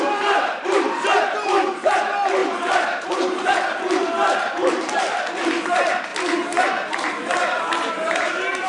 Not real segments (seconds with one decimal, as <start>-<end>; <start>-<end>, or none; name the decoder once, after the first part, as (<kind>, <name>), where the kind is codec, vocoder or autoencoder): 0.0-2.4 (vocoder, BigVGAN v2); 3.6-8.7